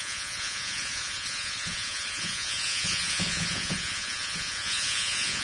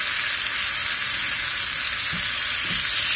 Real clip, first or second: second